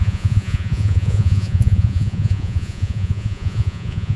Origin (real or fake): fake